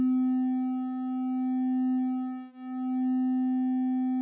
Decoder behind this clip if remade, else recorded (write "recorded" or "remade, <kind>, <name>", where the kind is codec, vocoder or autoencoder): recorded